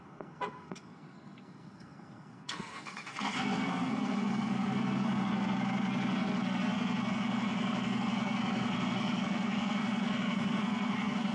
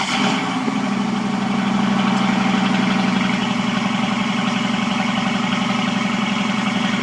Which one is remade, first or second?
first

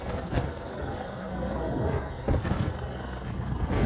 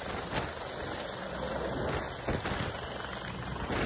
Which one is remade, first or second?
first